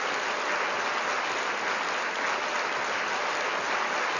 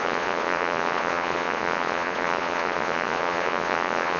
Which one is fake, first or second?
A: second